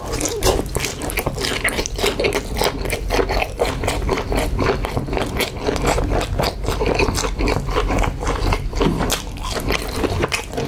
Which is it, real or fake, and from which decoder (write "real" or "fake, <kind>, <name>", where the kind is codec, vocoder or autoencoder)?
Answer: real